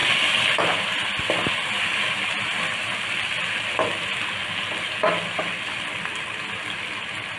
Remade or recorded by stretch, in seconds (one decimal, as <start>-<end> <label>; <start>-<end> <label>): 0.0-7.4 recorded